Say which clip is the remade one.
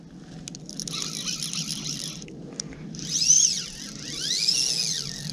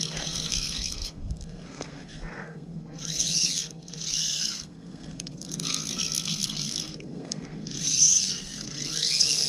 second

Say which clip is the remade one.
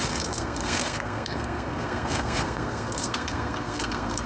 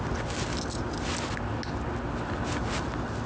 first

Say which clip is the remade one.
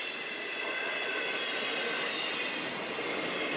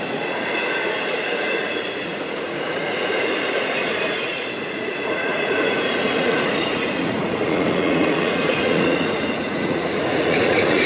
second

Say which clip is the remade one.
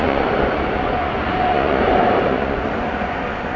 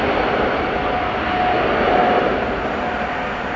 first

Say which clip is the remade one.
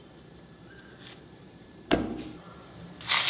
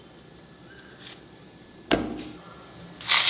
first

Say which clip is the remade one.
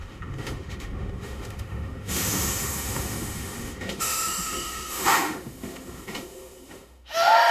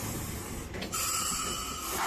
first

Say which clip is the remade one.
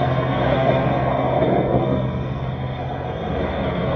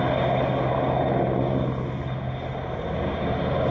first